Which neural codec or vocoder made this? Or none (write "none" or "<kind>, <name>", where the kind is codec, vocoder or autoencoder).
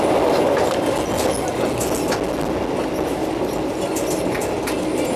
none